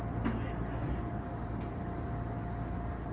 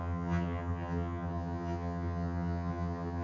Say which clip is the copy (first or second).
second